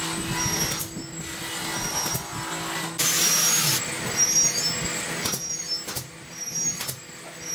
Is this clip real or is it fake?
real